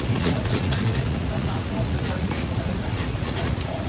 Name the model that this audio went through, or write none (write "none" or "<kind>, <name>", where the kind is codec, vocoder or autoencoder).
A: vocoder, Vocos